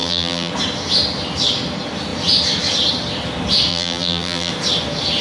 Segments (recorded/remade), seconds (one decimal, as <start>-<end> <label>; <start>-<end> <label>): 0.0-0.5 remade; 0.5-3.7 recorded; 3.7-4.5 remade; 4.5-5.2 recorded